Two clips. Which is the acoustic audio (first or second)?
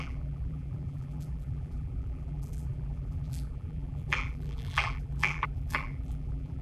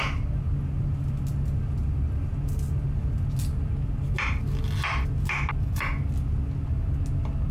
second